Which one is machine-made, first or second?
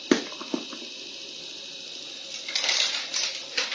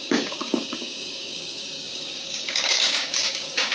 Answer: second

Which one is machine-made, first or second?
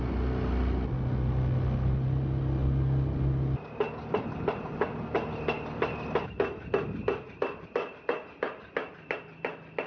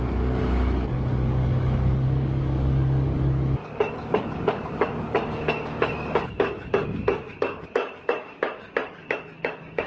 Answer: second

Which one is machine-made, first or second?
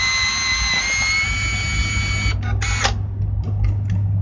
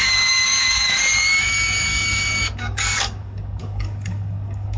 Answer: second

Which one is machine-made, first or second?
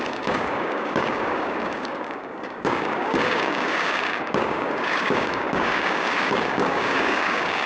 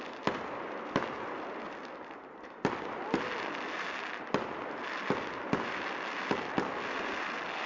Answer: first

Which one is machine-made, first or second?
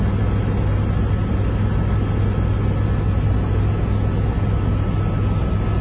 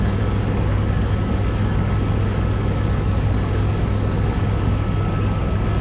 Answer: second